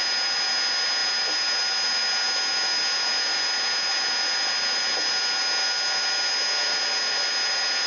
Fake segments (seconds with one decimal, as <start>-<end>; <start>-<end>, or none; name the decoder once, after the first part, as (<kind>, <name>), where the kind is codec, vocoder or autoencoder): none

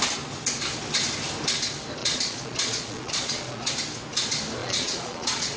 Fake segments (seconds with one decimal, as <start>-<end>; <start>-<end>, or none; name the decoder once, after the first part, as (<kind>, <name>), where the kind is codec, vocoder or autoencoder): 2.0-3.7 (vocoder, Vocos); 4.6-5.6

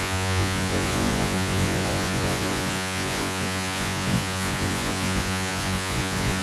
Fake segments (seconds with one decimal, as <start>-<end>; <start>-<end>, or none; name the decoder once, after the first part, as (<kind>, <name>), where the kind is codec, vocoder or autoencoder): 0.0-6.4 (vocoder, Vocos)

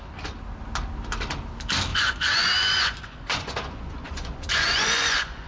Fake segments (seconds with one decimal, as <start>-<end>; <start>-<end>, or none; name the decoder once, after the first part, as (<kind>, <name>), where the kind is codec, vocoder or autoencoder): 1.9-5.5 (vocoder, Vocos)

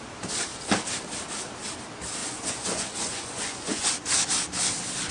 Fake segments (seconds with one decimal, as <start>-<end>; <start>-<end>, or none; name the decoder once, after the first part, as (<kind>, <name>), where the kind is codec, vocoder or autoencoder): 2.2-3.9 (vocoder, Vocos)

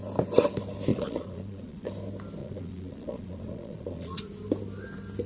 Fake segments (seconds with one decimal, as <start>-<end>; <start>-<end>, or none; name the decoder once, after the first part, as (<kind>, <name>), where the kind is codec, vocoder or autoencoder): 0.9-1.9 (vocoder, Vocos); 2.4-4.2

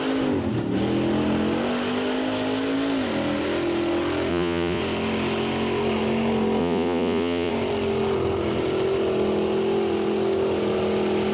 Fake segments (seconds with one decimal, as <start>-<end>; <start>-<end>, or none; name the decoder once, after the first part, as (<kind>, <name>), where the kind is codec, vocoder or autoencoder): 4.3-4.8 (vocoder, Vocos); 6.6-7.5

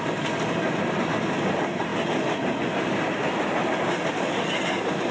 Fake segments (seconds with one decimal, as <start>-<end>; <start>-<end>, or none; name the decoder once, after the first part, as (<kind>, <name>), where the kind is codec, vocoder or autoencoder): none